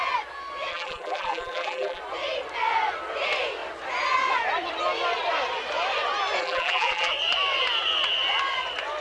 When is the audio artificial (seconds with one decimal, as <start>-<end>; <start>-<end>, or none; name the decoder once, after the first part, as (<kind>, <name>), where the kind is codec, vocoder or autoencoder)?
0.7-2.0 (vocoder, BigVGAN v2); 6.4-7.1